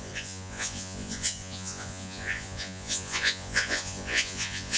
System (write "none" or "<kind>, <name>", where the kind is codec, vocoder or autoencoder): vocoder, Vocos